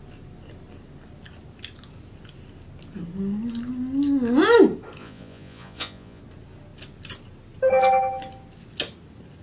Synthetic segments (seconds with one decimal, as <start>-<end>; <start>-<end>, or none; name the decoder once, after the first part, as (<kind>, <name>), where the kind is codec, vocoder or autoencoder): 5.0-6.2 (vocoder, Vocos)